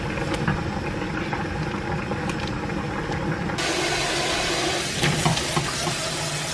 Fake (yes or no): no